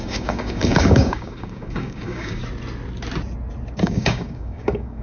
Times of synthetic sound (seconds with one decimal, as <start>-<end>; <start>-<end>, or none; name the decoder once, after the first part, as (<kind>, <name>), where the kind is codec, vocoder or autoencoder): 0.0-2.4 (codec, DAC); 3.8-5.0